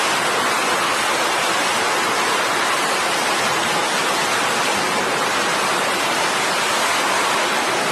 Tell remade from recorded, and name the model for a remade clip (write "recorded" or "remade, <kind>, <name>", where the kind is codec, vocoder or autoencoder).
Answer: recorded